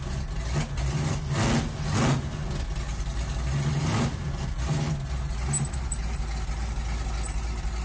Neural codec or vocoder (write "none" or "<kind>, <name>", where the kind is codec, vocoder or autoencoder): none